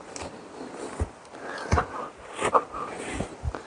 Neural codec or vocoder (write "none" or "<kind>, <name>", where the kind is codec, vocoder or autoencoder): none